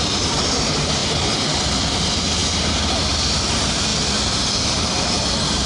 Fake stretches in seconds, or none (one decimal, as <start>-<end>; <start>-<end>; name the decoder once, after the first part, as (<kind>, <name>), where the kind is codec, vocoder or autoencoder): none